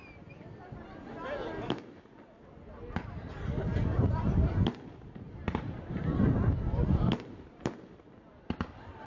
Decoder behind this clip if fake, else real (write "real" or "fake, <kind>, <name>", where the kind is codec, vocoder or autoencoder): real